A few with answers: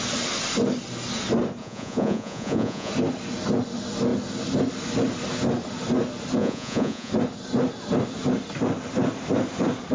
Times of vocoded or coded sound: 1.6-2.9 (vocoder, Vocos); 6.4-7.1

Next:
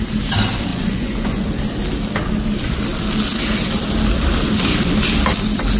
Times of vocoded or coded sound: 0.7-1.4 (vocoder, Vocos)

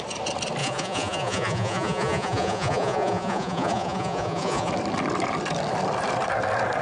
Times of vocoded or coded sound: 0.6-4.7 (vocoder, Vocos)

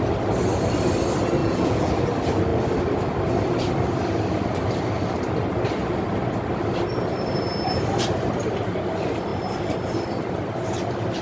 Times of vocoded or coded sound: 1.4-1.9 (vocoder, Vocos)

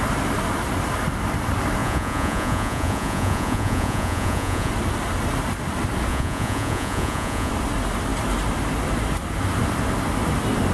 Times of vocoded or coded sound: 1.8-4.7 (vocoder, Vocos); 6.1-7.5

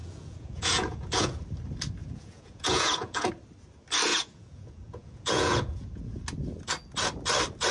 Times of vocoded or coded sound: 0.0-1.4 (vocoder, Vocos); 2.0-3.3; 4.1-6.2